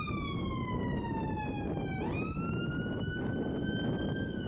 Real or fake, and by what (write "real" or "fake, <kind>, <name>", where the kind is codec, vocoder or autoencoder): real